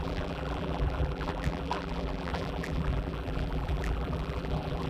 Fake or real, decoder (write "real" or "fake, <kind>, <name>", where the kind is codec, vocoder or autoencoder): fake, vocoder, BigVGAN v2